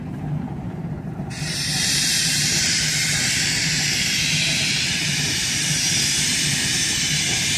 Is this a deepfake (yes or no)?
yes